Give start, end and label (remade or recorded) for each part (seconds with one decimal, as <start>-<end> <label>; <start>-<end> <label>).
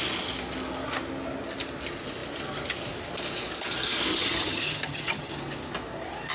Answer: 0.0-4.1 recorded; 4.1-5.3 remade; 5.3-6.3 recorded